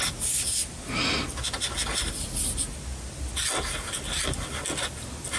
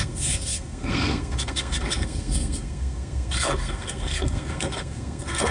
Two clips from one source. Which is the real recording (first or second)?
first